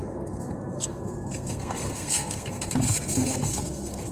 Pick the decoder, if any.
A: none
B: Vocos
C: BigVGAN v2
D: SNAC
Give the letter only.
D